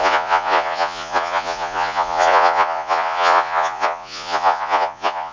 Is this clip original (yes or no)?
no